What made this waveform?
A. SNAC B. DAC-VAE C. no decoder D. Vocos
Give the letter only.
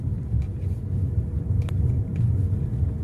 C